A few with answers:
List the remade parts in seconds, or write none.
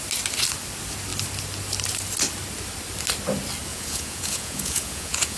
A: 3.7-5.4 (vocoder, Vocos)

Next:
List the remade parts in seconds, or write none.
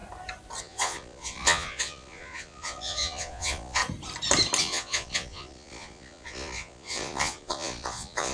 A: 0.6-3.8 (vocoder, Vocos); 4.6-8.3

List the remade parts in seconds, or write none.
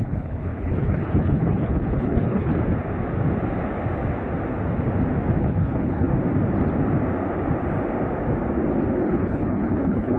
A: 0.0-2.5 (codec, HILCodec); 5.4-6.1; 9.0-10.2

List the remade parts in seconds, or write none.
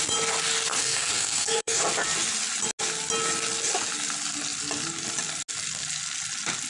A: 0.8-1.8 (codec, SNAC)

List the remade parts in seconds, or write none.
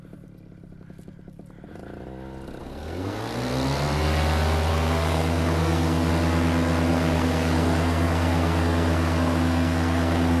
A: 2.6-3.2 (codec, SNAC); 4.7-6.1; 6.9-10.4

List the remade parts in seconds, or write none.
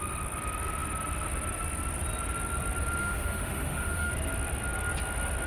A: 3.0-4.1 (autoencoder, DAC-VAE)